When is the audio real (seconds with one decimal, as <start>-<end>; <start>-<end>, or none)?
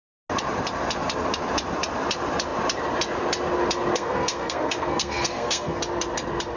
0.0-3.9; 5.8-6.6